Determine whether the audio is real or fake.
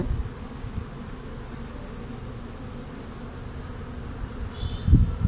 real